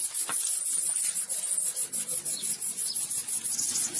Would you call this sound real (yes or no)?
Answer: yes